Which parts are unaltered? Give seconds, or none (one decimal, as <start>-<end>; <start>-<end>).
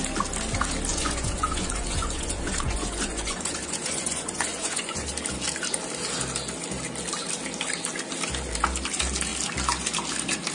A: 0.0-0.9; 5.1-10.5